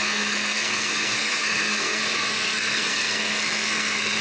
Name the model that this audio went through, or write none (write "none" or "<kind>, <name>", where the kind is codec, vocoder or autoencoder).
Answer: codec, SNAC